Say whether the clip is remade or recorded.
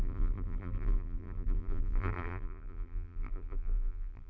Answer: remade